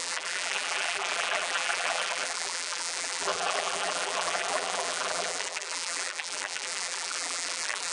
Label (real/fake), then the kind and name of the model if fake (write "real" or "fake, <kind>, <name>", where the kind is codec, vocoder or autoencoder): fake, vocoder, BigVGAN v2